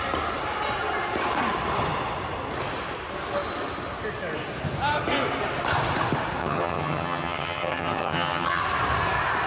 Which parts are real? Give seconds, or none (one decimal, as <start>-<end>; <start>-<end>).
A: 0.0-6.4; 8.6-9.5